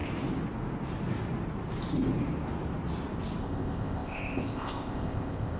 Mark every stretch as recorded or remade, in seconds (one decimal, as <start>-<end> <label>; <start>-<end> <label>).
0.0-3.4 recorded; 3.4-5.6 remade